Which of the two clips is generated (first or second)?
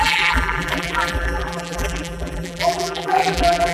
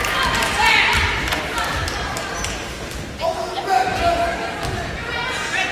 first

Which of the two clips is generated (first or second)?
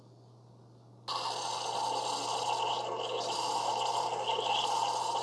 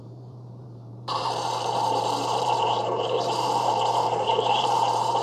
second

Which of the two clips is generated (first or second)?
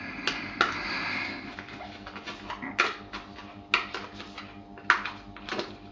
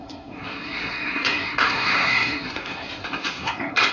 second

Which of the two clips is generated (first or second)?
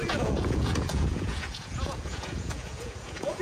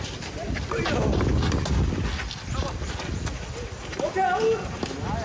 first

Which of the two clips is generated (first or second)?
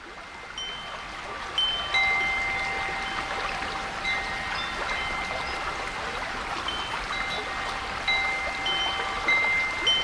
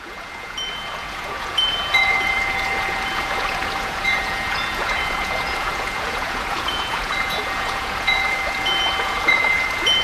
second